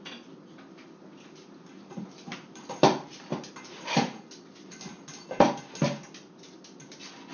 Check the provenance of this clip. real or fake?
real